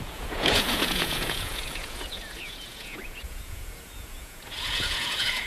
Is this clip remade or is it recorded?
remade